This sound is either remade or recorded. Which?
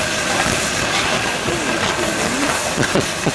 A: remade